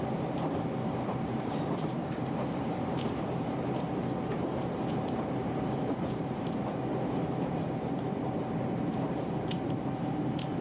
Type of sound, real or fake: fake